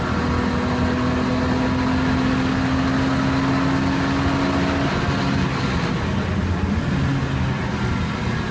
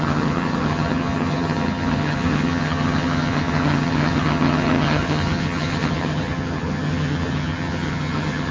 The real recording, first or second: first